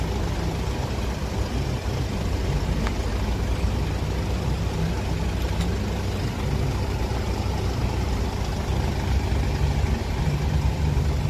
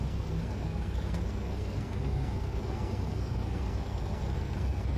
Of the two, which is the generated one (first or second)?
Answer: second